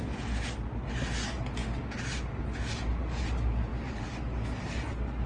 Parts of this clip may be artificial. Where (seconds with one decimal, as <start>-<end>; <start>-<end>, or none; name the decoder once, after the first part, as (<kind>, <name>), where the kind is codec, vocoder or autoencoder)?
none